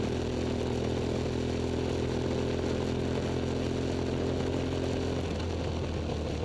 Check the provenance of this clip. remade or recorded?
recorded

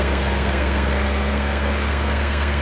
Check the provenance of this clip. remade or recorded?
remade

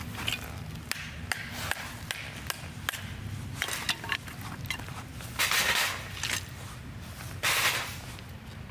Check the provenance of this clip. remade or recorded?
recorded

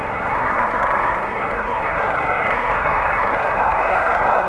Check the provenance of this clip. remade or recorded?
remade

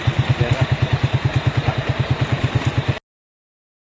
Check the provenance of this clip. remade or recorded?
recorded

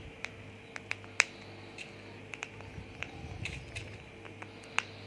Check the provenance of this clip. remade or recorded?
recorded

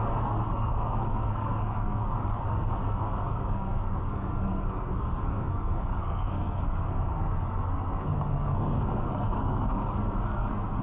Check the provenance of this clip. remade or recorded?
remade